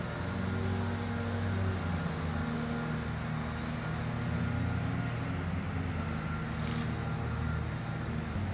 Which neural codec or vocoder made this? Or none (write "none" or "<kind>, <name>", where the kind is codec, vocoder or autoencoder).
none